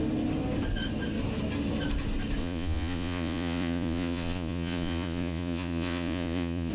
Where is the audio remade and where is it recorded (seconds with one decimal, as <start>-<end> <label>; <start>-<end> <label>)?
0.0-2.4 recorded; 2.4-6.7 remade